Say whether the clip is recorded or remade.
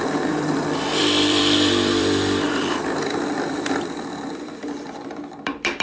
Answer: remade